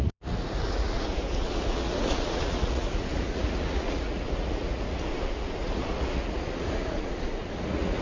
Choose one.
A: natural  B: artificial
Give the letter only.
B